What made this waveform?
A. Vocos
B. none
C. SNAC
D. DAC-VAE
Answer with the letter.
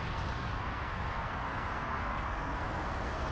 C